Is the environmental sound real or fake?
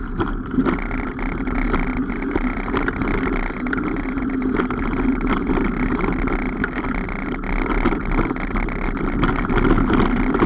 real